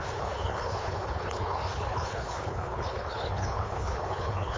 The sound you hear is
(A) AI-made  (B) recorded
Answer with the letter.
A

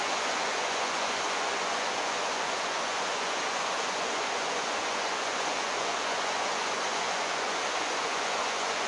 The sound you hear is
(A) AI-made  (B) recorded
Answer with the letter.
A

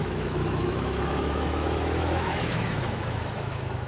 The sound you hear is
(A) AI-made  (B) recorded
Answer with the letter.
A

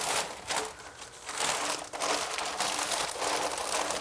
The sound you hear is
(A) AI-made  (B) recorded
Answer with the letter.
B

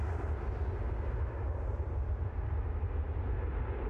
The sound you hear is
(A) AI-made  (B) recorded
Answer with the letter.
B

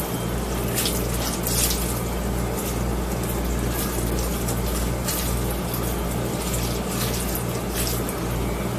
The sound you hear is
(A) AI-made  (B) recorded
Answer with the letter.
B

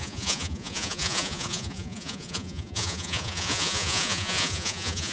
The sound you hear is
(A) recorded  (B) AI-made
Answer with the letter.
B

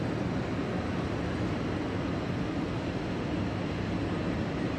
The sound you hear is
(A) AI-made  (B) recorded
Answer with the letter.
B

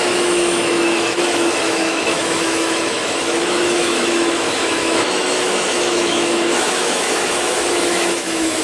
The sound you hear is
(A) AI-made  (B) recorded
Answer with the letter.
A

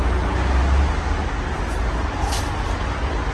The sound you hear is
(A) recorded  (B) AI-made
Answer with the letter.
A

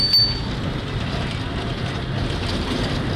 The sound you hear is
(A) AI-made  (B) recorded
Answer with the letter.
B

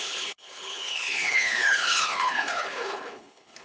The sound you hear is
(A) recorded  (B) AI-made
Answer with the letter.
B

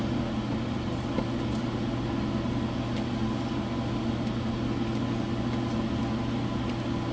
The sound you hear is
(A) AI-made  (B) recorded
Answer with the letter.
B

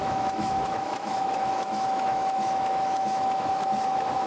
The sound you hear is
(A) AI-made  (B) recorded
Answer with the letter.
A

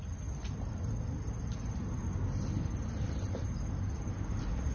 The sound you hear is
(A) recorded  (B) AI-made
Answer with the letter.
A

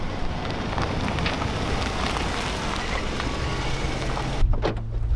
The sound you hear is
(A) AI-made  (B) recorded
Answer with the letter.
B